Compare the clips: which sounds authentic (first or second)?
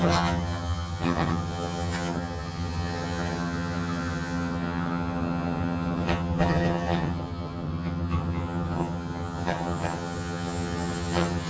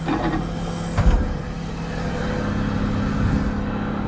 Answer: second